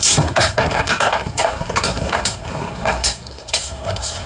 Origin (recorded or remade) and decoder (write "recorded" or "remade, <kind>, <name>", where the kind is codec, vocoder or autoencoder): remade, codec, SNAC